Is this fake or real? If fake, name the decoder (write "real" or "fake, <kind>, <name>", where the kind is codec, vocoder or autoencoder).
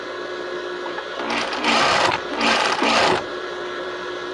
fake, vocoder, BigVGAN v2